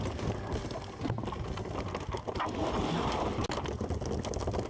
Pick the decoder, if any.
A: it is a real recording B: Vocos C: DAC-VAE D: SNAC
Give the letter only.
A